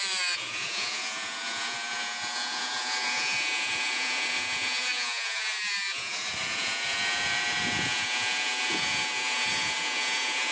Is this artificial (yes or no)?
yes